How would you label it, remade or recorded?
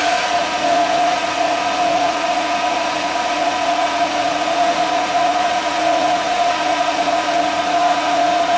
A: remade